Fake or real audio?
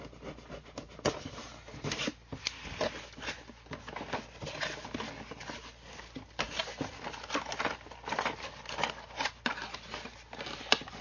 real